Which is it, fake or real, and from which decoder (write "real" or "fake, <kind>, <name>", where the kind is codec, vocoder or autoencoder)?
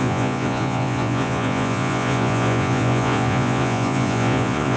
fake, vocoder, Vocos